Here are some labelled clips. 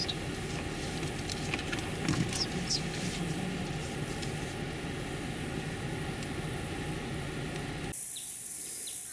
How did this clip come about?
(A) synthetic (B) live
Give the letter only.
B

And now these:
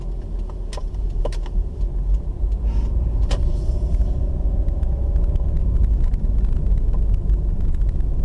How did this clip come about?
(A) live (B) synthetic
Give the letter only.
A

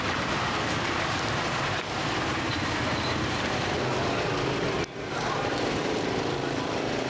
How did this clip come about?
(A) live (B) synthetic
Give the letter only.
B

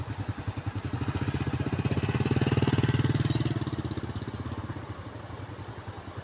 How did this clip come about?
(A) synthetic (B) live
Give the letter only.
B